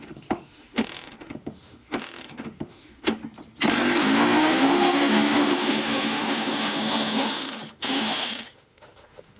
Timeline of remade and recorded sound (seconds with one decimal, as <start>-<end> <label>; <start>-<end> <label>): 0.0-3.2 remade; 3.2-4.0 recorded; 4.0-9.4 remade